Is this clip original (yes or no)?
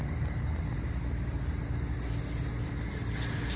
yes